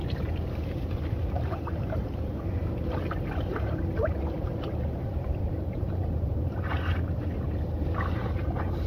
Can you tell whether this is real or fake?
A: fake